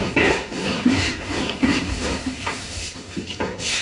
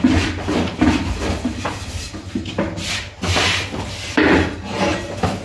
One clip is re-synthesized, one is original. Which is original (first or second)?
second